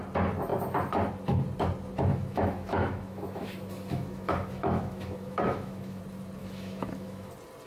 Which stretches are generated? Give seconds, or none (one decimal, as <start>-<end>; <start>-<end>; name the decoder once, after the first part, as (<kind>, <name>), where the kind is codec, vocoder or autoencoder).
2.1-6.0 (autoencoder, DAC-VAE); 6.4-7.3

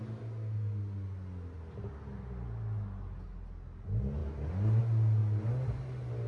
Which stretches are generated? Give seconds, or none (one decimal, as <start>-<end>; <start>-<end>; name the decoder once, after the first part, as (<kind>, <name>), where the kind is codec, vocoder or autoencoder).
none